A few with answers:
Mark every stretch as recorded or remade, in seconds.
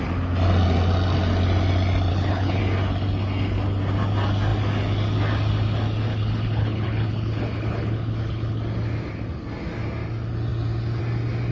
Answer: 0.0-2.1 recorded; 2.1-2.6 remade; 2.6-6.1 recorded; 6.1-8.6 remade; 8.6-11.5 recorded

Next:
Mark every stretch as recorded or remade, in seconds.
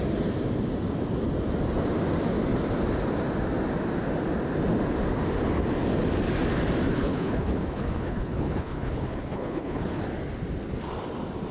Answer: 0.0-6.9 recorded; 6.9-10.0 remade; 10.0-11.5 recorded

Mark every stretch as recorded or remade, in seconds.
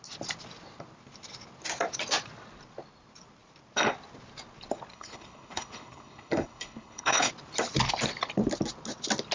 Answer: 0.0-4.9 recorded; 4.9-7.3 remade; 7.3-9.3 recorded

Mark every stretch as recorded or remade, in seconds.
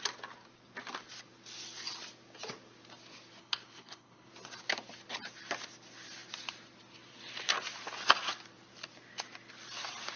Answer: 0.0-3.4 recorded; 3.4-4.3 remade; 4.3-10.2 recorded